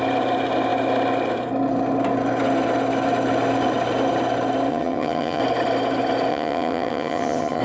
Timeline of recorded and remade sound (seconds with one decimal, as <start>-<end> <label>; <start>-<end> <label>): 0.0-4.7 recorded; 4.7-5.4 remade; 5.4-6.3 recorded; 6.3-7.6 remade